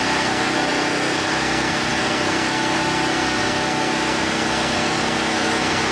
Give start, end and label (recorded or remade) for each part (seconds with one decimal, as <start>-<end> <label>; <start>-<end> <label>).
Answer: 0.0-5.9 remade